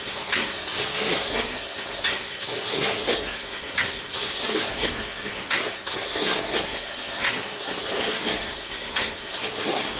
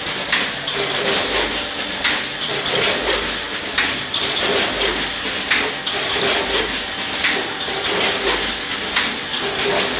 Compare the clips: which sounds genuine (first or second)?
second